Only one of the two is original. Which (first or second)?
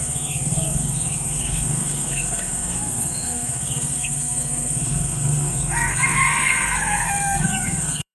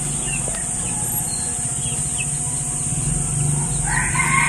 second